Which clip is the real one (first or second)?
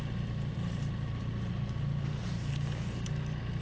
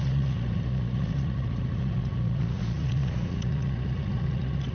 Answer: first